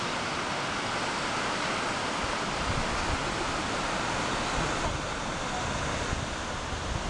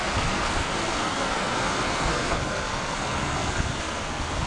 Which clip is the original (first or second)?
first